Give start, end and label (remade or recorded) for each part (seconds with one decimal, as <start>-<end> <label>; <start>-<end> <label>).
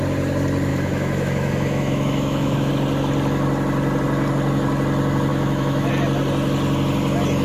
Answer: 0.0-0.7 recorded; 0.7-2.7 remade; 2.7-5.3 recorded; 5.3-5.9 remade; 5.9-7.4 recorded